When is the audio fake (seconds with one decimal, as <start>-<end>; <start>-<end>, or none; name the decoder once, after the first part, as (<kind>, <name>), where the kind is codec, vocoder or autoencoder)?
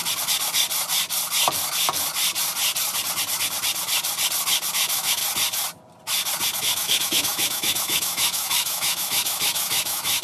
4.7-5.2 (autoencoder, DAC-VAE); 6.6-10.2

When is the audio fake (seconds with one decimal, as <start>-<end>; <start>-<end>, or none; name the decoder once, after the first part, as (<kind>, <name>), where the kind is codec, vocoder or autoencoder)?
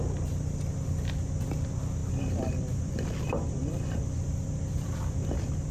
2.0-5.2 (vocoder, BigVGAN v2)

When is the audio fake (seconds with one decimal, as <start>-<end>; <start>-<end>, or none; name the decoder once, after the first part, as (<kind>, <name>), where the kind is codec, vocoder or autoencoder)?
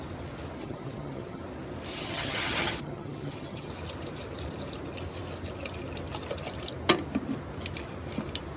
0.6-1.4 (vocoder, HiFi-GAN); 1.9-3.7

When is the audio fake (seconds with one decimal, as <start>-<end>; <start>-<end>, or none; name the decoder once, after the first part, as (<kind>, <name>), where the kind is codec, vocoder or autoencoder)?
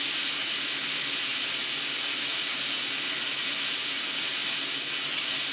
none